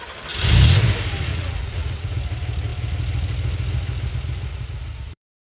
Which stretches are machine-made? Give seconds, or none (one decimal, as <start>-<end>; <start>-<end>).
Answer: 1.3-2.1; 4.5-5.5